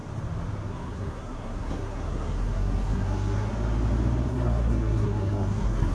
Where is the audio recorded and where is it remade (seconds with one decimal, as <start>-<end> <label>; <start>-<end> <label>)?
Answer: 0.0-0.7 recorded; 0.7-3.5 remade; 3.5-4.3 recorded; 4.3-5.9 remade